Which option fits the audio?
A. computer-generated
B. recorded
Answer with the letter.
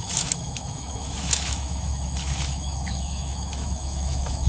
A